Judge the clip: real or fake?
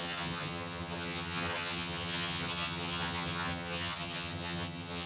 fake